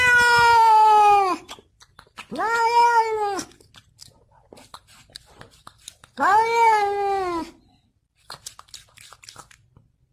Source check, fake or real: real